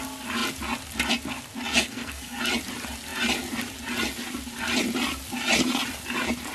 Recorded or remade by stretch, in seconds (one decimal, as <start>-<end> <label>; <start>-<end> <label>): 0.0-1.7 recorded; 1.7-2.4 remade; 2.4-6.5 recorded